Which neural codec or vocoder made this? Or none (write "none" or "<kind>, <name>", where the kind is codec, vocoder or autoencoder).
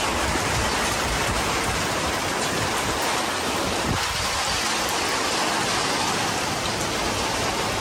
none